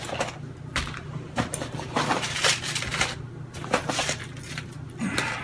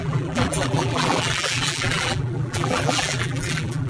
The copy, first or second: second